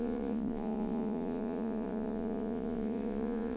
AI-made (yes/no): yes